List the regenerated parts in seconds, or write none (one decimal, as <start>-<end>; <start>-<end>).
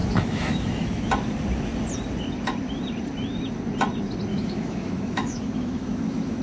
0.0-1.1; 4.3-6.4